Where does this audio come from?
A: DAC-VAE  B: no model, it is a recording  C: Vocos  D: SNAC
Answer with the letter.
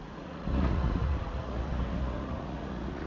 C